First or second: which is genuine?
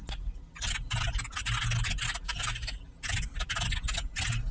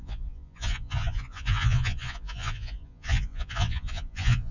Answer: first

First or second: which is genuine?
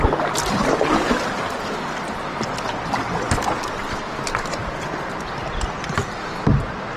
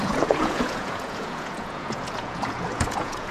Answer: first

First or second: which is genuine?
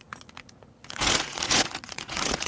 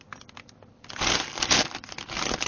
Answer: second